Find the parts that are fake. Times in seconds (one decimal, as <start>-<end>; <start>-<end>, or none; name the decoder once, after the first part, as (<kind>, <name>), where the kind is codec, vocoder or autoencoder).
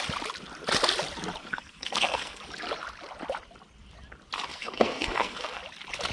1.4-2.4 (codec, SNAC); 4.5-5.6